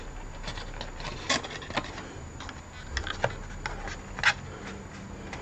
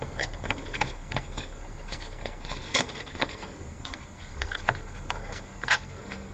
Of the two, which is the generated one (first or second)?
second